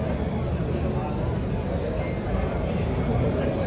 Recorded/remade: recorded